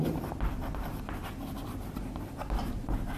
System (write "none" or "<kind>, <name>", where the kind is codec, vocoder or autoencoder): none